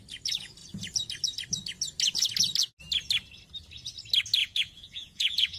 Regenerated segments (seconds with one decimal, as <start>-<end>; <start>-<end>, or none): 4.4-5.6